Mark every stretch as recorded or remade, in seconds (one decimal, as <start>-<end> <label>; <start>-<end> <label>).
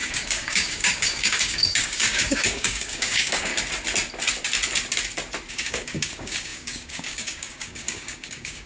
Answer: 0.0-3.5 remade; 3.5-5.5 recorded; 5.5-8.7 remade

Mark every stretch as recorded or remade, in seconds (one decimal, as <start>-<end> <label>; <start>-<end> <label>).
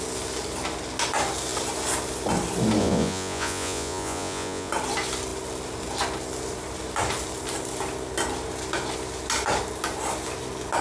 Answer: 0.0-2.8 recorded; 2.8-4.7 remade; 4.7-10.8 recorded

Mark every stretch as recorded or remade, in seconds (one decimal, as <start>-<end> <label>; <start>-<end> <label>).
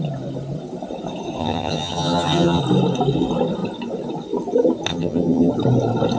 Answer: 0.0-1.4 recorded; 1.4-2.6 remade; 2.6-4.9 recorded; 4.9-5.5 remade; 5.5-6.2 recorded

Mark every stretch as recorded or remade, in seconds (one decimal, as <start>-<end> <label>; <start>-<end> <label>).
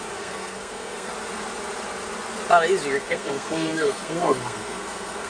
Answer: 0.0-1.1 remade; 1.1-3.0 recorded; 3.0-5.3 remade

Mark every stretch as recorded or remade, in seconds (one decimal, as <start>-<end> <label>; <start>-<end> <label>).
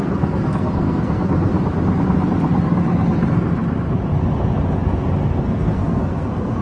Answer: 0.0-1.5 remade; 1.5-5.4 recorded; 5.4-6.6 remade